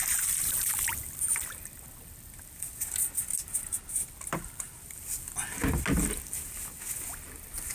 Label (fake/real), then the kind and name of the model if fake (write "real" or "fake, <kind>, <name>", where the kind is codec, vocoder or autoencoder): real